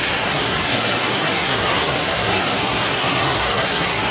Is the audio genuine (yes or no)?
no